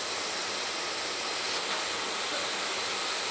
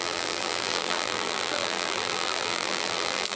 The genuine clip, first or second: first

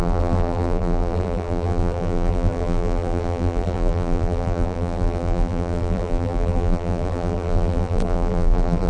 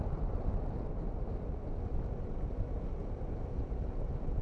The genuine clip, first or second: second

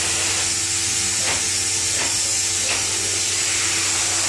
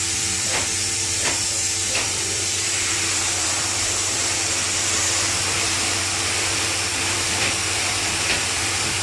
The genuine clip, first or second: first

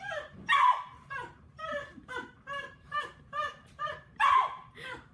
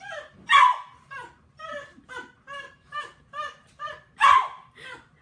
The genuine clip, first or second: second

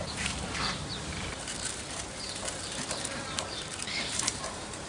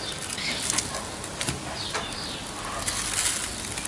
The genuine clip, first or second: second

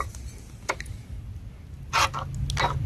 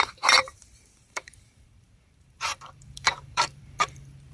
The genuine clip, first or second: first